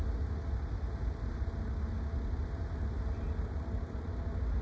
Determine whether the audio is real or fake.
real